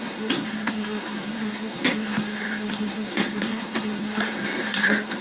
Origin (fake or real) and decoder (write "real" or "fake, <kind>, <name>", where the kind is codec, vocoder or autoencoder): fake, codec, SNAC